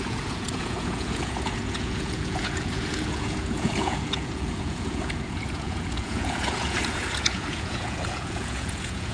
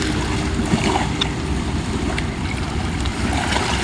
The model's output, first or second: first